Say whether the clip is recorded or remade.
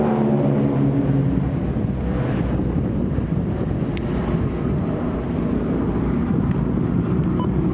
recorded